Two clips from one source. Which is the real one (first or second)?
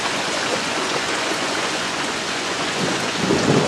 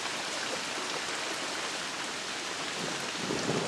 second